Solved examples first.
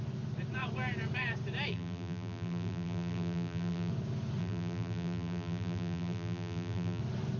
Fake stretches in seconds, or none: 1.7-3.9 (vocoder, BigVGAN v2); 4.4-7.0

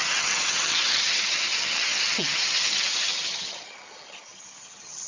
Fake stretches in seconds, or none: 0.0-5.1 (vocoder, HiFi-GAN)

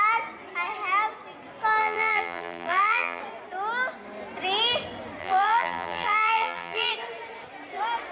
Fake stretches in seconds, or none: 1.8-3.2 (vocoder, BigVGAN v2); 5.2-6.9

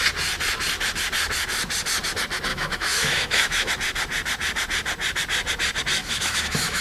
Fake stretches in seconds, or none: 2.5-3.7 (autoencoder, DAC-VAE); 6.0-6.8